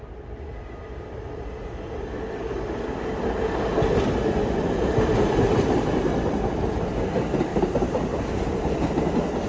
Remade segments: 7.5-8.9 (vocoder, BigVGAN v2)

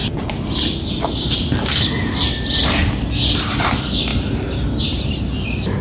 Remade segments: 0.0-2.8 (vocoder, BigVGAN v2); 3.6-4.1; 4.8-5.8